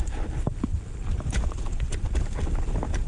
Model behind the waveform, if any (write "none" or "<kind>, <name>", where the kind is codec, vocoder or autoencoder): none